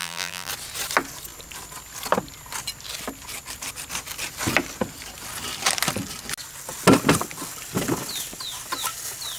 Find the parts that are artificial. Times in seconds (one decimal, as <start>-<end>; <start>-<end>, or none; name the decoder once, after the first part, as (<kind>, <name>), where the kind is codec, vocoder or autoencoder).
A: 0.0-0.5 (vocoder, BigVGAN v2)